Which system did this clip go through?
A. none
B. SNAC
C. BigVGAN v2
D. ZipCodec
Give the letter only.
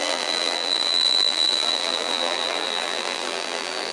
C